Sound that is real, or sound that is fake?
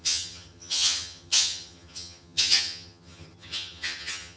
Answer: fake